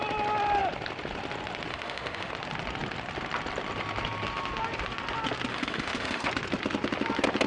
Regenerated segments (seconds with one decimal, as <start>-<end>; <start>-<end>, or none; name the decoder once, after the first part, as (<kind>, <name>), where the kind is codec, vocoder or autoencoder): 1.7-2.3 (autoencoder, DAC-VAE); 5.5-6.3